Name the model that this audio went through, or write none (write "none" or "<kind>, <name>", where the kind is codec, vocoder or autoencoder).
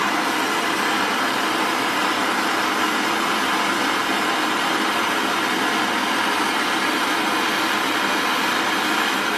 none